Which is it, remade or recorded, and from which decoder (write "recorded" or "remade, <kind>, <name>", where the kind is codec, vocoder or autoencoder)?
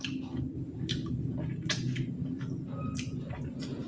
recorded